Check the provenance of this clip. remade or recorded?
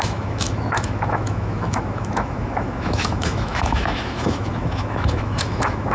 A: remade